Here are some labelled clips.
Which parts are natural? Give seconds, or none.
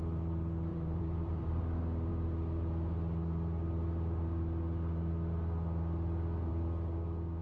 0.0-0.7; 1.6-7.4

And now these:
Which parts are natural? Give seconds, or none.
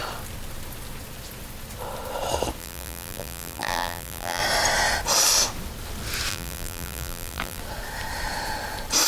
0.0-2.6; 4.4-6.3; 7.6-9.1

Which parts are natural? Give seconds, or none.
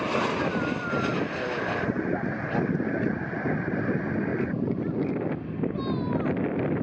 0.0-6.8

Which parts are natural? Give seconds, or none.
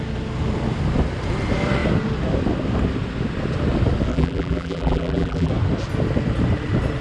0.0-4.1; 5.5-7.0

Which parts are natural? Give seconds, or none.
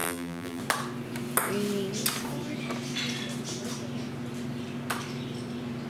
0.6-5.9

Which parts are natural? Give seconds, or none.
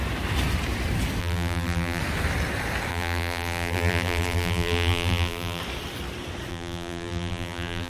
0.0-1.2; 2.0-2.9; 5.6-6.5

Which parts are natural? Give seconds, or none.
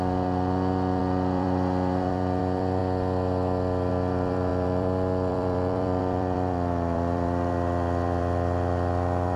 2.8-3.9